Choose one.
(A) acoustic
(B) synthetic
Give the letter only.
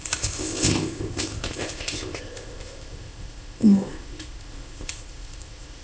B